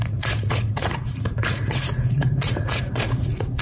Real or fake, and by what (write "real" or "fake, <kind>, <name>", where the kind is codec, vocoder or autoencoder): fake, vocoder, Vocos